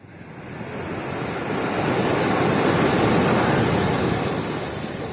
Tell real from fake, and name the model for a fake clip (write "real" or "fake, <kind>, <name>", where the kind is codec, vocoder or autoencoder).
real